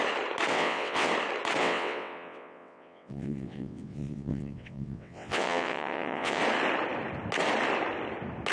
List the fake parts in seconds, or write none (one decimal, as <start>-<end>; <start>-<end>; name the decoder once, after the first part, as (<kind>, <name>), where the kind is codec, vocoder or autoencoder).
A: 0.5-1.1 (vocoder, WaveNeXt); 1.6-6.4